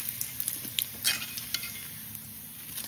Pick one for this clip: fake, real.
real